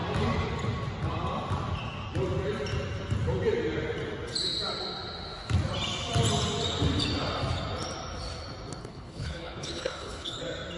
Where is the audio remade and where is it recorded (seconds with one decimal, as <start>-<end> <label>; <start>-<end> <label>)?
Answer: 0.0-8.8 recorded; 8.8-10.4 remade; 10.4-10.8 recorded